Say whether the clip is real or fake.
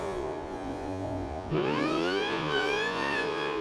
fake